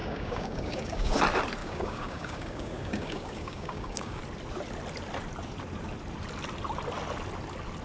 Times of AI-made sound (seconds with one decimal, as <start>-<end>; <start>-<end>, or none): 0.0-1.2; 1.6-4.2

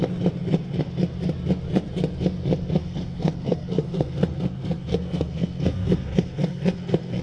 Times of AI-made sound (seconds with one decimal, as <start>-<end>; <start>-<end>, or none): 2.8-7.2

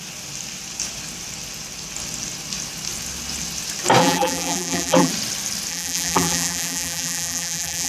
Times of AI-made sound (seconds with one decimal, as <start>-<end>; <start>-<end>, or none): 4.0-5.1; 5.7-7.9

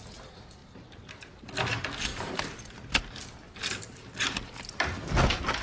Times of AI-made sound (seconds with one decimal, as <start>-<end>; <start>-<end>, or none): 0.6-1.5; 2.1-3.2

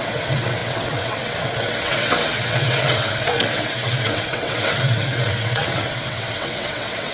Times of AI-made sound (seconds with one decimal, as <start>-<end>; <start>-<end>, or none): 0.0-7.1

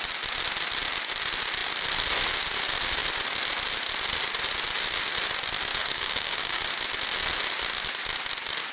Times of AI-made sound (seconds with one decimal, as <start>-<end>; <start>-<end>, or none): 5.7-6.6